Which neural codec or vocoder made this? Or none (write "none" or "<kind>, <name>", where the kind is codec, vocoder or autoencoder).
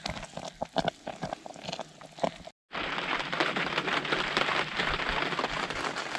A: none